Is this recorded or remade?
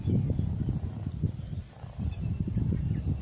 recorded